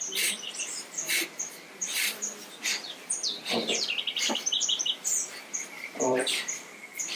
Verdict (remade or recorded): remade